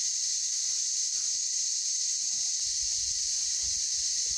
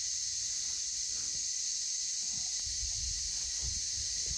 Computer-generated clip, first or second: first